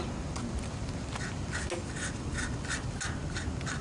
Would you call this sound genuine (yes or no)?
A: yes